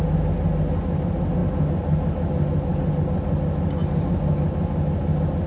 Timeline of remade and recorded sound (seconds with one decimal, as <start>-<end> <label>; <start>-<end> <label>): 0.0-5.5 recorded